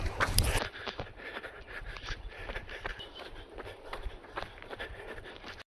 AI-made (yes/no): yes